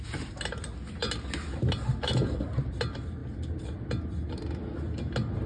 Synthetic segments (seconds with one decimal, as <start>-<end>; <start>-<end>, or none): none